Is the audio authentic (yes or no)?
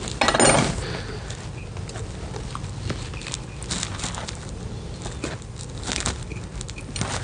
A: yes